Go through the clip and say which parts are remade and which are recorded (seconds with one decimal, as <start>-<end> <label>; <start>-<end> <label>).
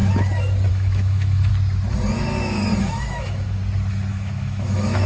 0.0-0.7 recorded; 0.7-1.5 remade; 1.5-2.8 recorded; 2.8-3.6 remade; 3.6-4.1 recorded; 4.1-5.1 remade